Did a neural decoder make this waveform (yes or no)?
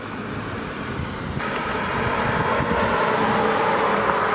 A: no